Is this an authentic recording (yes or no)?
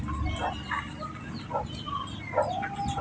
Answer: yes